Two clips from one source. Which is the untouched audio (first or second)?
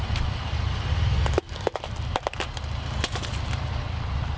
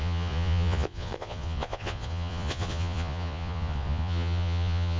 first